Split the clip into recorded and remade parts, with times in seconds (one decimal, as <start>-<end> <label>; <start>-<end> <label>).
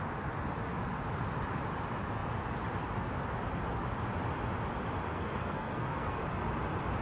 0.0-5.1 recorded; 5.1-6.2 remade; 6.2-7.0 recorded